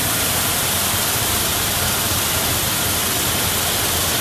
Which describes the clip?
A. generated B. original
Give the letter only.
B